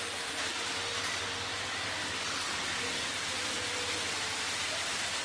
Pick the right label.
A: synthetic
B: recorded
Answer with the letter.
B